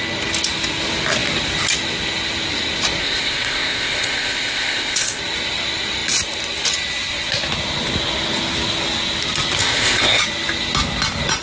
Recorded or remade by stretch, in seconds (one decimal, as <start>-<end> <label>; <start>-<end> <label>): 0.0-3.0 recorded; 3.0-5.2 remade; 5.2-9.6 recorded; 9.6-10.2 remade; 10.2-11.4 recorded